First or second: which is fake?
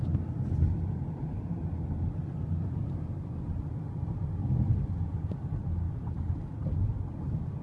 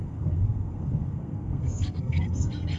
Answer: second